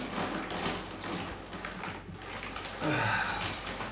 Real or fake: real